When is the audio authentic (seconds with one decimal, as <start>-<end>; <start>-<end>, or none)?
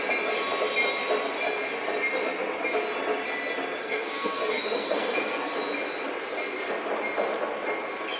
0.0-3.8; 5.5-8.2